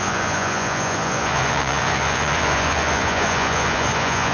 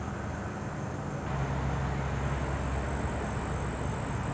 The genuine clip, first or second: second